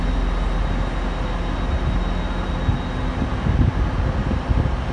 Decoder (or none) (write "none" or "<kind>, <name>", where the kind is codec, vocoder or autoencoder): none